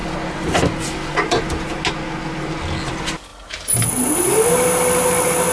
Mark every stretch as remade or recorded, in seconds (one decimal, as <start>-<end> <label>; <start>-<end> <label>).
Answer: 0.0-5.5 recorded